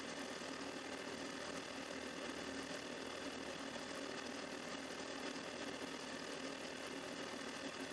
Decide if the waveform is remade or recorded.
recorded